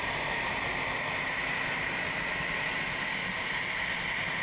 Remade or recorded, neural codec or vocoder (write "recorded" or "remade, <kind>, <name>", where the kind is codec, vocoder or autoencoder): recorded